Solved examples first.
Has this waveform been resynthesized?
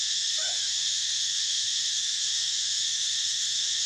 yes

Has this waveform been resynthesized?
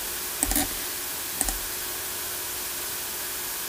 no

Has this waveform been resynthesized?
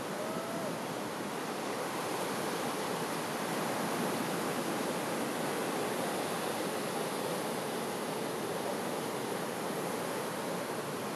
no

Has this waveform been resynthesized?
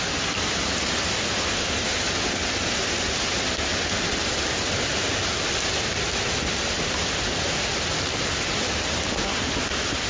no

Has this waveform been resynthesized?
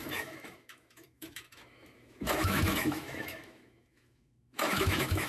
yes